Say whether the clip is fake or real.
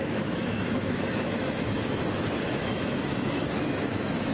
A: fake